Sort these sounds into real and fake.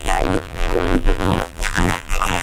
fake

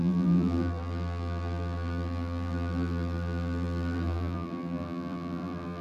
fake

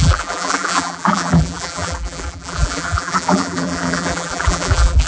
fake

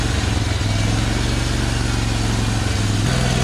real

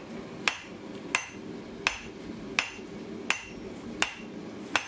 real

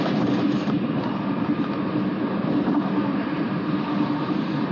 real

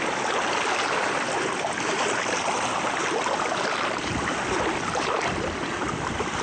fake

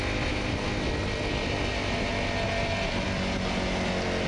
real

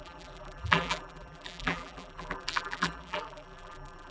fake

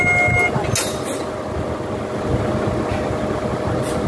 real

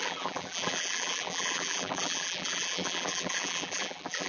fake